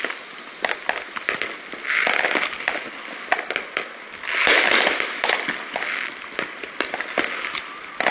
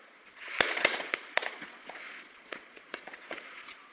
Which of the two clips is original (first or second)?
first